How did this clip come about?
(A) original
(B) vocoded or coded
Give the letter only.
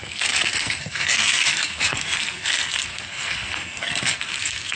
B